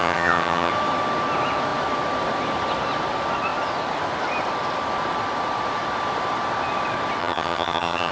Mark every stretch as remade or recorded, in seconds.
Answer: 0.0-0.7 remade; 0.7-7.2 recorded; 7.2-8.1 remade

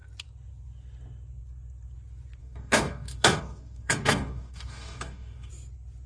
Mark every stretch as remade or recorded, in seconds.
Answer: 0.0-2.4 recorded; 2.4-5.5 remade; 5.5-6.1 recorded

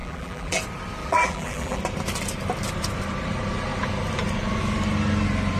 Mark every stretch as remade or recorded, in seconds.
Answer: 0.0-0.6 remade; 0.6-1.0 recorded; 1.0-1.8 remade; 1.8-5.6 recorded

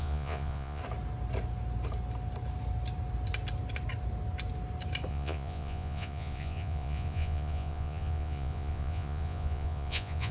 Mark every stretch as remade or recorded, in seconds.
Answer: 0.0-0.8 remade; 0.8-5.1 recorded; 5.1-10.3 remade

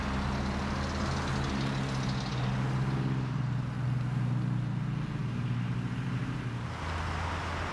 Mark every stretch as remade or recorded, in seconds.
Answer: 0.0-7.7 recorded

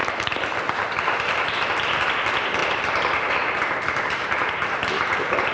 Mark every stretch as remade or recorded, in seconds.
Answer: 0.0-2.6 recorded; 2.6-3.3 remade; 3.3-4.2 recorded; 4.2-4.8 remade; 4.8-5.5 recorded

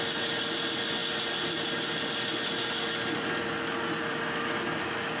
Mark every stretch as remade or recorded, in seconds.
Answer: 0.0-5.2 recorded